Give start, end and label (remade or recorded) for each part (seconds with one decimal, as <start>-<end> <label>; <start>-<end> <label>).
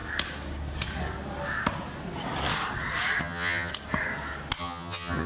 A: 0.0-3.2 recorded; 3.2-3.7 remade; 3.7-4.6 recorded; 4.6-5.3 remade